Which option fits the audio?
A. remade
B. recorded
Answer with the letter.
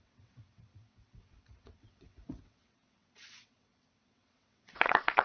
A